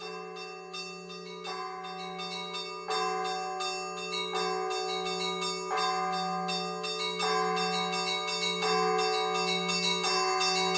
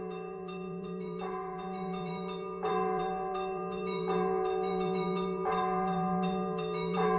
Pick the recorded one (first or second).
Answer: first